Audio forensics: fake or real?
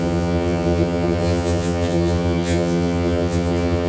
fake